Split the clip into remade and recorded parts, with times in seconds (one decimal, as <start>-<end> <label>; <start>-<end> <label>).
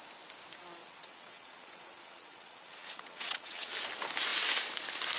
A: 0.0-0.8 recorded; 0.8-3.7 remade; 3.7-5.2 recorded